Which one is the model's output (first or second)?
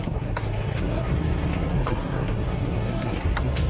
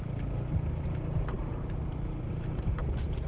first